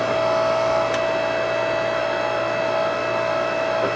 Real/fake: real